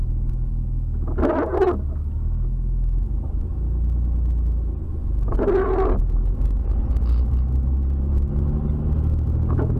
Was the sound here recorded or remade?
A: recorded